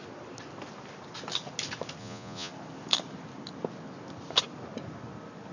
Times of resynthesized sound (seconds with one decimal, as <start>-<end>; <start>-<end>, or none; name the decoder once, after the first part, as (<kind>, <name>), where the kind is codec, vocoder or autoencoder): 2.0-2.5 (vocoder, Vocos)